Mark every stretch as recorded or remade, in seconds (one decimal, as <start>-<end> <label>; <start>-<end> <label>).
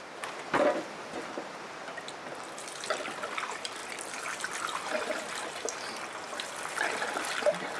0.0-7.8 recorded